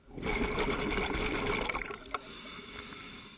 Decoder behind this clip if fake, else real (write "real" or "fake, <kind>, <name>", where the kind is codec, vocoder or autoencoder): real